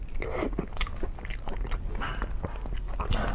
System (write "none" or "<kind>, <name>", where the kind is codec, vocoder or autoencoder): none